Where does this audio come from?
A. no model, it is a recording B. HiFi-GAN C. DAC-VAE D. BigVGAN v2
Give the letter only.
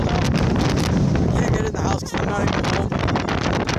D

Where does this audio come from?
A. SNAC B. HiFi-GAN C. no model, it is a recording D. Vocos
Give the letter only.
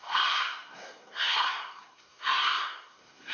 A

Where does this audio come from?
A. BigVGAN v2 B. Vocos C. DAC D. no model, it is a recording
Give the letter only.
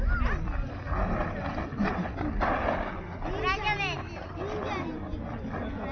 D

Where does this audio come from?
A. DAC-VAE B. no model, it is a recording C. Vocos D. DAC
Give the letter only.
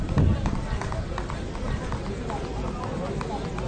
B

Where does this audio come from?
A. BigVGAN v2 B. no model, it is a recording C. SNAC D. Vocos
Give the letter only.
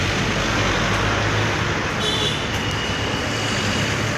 B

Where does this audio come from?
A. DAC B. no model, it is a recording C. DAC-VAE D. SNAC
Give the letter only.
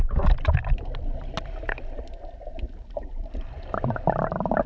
B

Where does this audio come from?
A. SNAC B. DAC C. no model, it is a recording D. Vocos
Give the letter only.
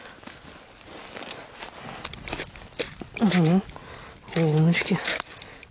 C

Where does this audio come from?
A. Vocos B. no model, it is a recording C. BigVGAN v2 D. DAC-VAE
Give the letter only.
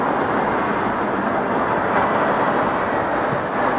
B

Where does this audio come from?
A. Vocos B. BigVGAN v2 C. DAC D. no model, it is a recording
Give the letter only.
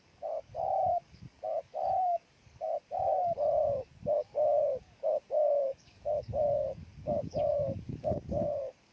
C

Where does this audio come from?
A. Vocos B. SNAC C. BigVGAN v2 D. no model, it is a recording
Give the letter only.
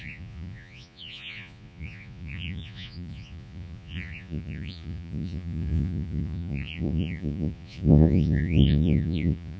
A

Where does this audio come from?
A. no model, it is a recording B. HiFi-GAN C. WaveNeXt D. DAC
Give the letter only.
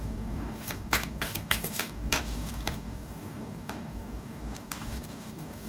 D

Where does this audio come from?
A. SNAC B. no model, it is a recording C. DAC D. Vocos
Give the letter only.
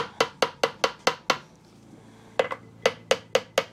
B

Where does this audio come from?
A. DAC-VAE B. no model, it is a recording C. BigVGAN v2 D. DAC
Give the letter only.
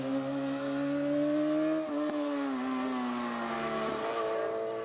B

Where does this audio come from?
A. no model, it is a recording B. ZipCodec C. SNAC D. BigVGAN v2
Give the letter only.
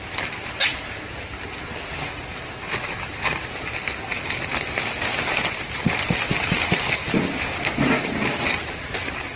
A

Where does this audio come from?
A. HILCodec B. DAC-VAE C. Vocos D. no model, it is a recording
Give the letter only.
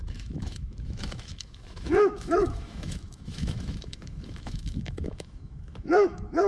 B